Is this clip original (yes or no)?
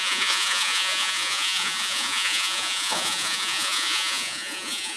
no